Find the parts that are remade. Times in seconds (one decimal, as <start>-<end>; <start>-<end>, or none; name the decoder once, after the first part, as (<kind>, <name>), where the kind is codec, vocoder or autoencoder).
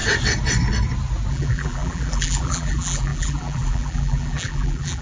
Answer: 1.3-5.0 (vocoder, BigVGAN v2)